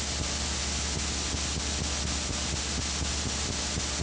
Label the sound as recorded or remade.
recorded